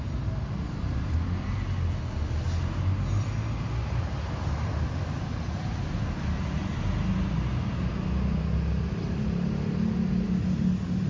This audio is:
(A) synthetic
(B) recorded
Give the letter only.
B